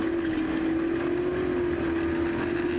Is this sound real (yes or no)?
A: yes